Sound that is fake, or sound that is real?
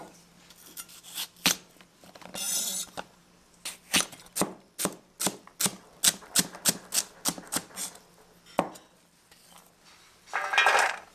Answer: real